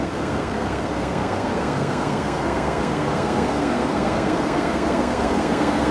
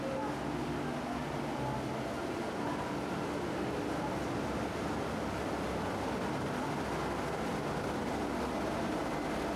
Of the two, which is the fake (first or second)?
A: first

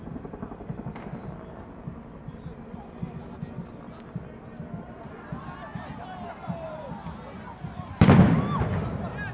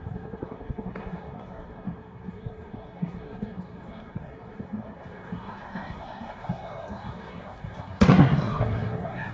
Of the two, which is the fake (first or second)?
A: second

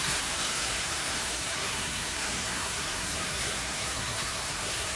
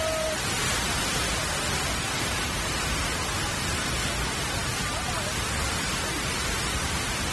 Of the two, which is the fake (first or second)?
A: first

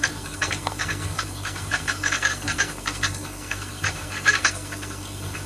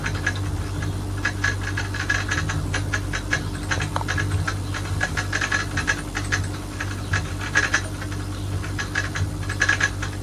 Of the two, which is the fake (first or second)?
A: first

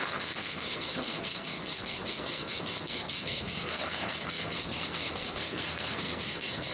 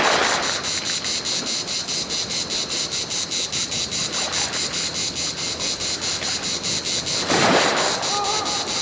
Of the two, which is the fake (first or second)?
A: first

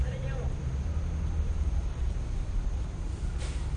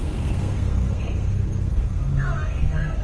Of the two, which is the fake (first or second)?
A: second